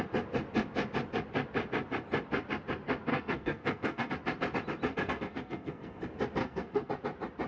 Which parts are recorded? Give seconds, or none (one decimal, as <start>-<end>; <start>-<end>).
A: 0.0-3.1; 4.1-4.9; 6.0-6.4; 6.9-7.5